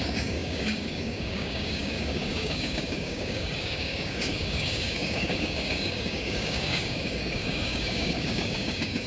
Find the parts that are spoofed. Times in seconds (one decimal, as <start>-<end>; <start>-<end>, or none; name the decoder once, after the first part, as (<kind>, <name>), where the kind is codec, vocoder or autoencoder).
0.0-9.1 (codec, DAC)